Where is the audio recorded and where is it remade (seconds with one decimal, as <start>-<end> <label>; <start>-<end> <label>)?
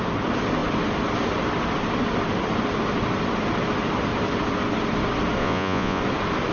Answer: 0.0-5.4 recorded; 5.4-6.0 remade; 6.0-6.5 recorded